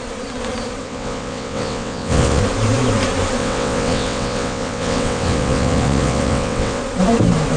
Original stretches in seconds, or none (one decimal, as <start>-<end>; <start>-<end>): 0.0-0.8; 2.4-3.4; 6.8-7.6

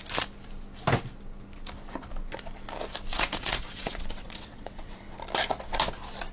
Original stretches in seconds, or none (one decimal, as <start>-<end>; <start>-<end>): 0.0-3.1; 5.0-6.3

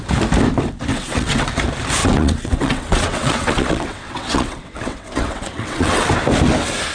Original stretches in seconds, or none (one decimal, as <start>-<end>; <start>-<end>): 0.0-0.9; 1.5-2.0; 6.1-6.9